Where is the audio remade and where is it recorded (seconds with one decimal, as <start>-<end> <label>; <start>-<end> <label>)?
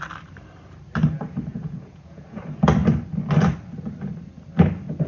0.0-1.5 recorded; 1.5-2.4 remade; 2.4-5.1 recorded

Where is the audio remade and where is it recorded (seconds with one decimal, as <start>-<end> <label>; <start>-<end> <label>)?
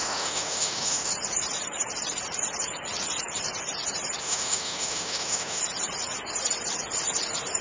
0.0-1.1 remade; 1.1-4.2 recorded; 4.2-5.6 remade; 5.6-7.6 recorded